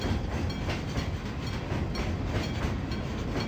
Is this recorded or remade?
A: recorded